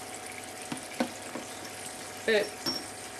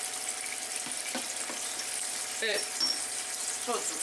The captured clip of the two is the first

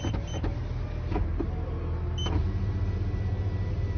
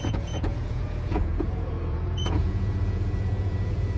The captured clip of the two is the first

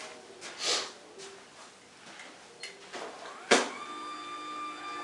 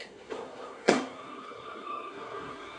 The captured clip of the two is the first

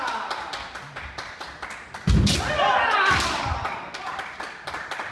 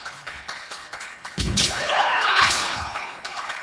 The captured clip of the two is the first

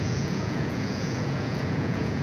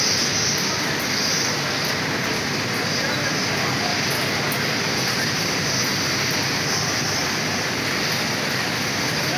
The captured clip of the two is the second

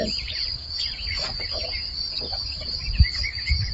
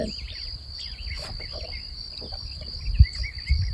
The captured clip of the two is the second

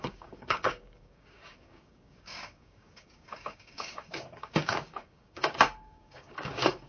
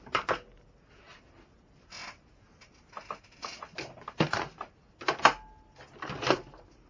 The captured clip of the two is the second